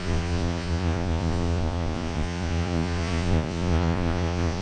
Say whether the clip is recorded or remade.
remade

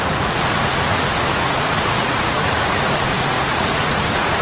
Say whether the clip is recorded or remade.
remade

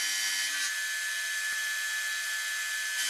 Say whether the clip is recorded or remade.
recorded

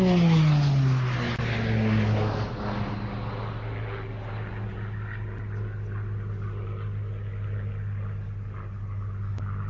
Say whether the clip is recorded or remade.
recorded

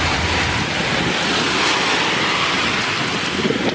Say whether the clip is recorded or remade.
recorded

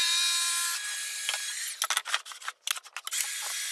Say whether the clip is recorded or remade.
recorded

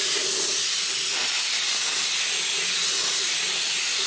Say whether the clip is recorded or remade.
recorded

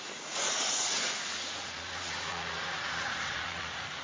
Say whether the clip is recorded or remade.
remade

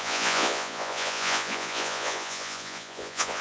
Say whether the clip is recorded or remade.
remade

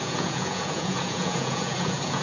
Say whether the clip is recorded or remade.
remade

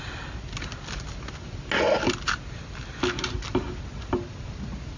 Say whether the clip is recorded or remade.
recorded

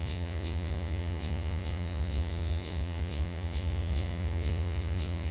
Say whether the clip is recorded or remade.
remade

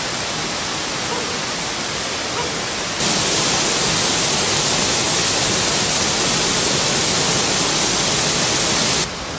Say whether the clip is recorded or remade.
recorded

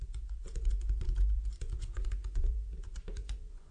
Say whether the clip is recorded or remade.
remade